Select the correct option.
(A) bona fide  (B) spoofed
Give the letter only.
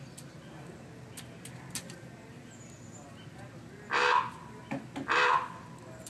A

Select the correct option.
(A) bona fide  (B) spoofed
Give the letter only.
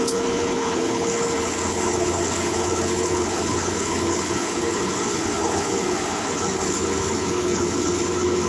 B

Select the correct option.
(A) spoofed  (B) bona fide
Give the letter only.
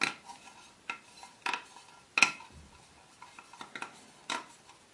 B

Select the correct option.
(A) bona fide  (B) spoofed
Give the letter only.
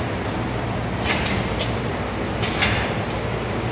A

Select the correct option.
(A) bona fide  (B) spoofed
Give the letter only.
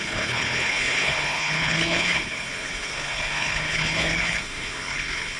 B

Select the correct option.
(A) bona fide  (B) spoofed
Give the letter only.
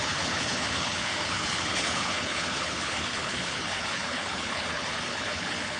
B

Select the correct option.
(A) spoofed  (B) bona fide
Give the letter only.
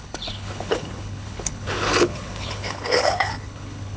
A